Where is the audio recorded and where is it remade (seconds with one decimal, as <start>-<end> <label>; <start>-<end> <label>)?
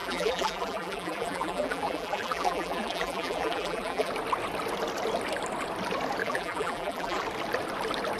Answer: 0.0-4.1 remade; 4.1-6.2 recorded; 6.2-7.2 remade; 7.2-8.2 recorded